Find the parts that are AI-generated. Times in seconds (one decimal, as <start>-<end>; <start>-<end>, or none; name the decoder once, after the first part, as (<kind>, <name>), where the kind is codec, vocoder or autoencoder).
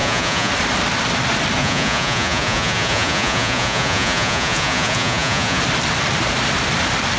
0.0-0.5 (vocoder, Vocos); 1.6-5.6